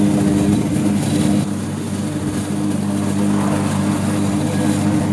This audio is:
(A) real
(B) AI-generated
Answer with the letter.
A